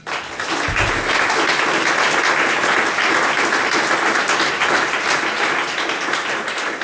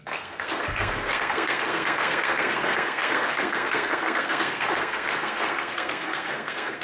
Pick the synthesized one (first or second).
second